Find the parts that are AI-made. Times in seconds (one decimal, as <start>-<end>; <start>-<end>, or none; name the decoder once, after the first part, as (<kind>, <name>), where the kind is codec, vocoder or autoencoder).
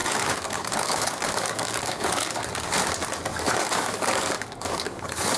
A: 0.0-2.4 (codec, DAC); 3.3-5.4